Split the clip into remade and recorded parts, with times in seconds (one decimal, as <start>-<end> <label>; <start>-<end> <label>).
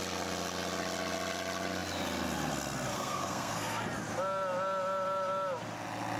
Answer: 0.0-2.9 recorded; 2.9-3.8 remade; 3.8-6.2 recorded